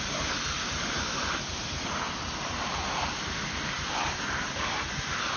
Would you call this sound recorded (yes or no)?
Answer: yes